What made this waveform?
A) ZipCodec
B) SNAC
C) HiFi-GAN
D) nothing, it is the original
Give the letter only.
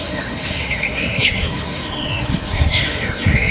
B